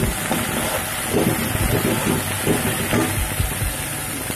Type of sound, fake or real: real